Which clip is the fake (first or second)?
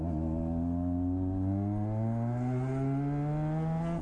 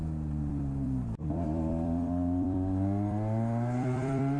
second